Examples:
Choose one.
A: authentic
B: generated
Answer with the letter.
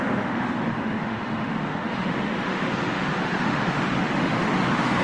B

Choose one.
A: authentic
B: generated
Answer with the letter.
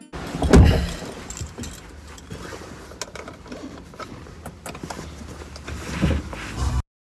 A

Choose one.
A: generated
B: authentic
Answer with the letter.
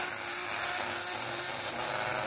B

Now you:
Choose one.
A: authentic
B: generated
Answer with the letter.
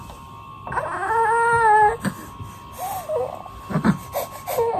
A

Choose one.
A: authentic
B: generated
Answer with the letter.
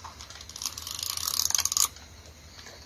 A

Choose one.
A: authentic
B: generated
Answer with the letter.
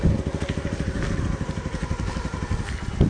A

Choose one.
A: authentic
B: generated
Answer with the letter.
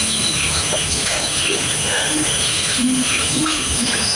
B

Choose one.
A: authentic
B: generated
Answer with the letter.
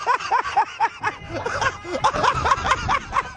A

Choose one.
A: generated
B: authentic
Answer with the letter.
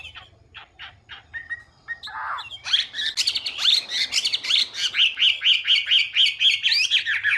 B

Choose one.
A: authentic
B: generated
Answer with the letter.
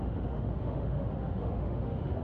B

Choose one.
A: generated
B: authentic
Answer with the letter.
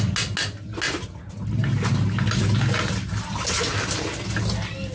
B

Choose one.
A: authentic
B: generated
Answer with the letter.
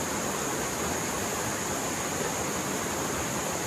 A